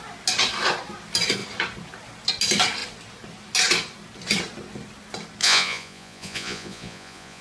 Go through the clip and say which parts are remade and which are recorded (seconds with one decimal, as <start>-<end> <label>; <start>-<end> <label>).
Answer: 0.0-5.4 recorded; 5.4-7.4 remade